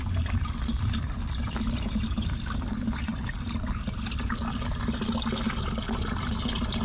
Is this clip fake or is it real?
real